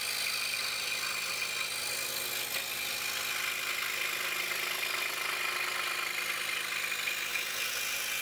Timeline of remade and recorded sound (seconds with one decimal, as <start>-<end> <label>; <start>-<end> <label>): 0.0-7.3 recorded; 7.3-8.2 remade